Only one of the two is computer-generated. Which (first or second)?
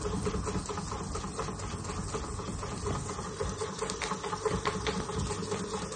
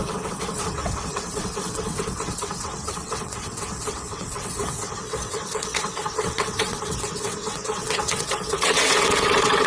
second